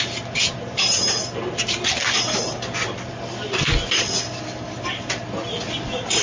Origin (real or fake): real